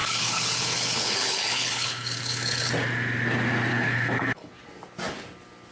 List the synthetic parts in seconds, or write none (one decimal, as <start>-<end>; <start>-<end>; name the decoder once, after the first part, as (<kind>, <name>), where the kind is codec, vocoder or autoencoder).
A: 0.0-2.7 (codec, HILCodec); 3.7-4.5